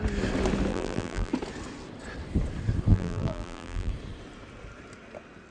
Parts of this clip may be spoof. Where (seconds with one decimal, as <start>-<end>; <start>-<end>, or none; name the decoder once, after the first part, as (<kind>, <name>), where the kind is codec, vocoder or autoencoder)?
0.7-1.3 (vocoder, BigVGAN v2); 2.9-3.9